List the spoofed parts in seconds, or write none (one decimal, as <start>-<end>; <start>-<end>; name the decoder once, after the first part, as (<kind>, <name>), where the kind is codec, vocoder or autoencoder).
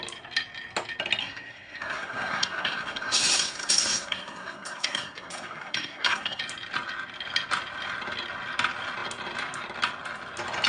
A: 1.2-6.4 (codec, SNAC)